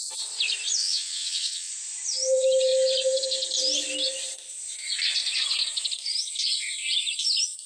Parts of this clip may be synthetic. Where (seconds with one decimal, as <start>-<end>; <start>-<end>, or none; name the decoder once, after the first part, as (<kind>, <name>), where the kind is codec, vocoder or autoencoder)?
0.8-1.7 (vocoder, WaveNeXt)